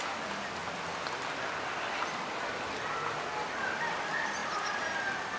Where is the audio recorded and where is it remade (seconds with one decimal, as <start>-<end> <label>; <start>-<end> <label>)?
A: 0.0-5.4 recorded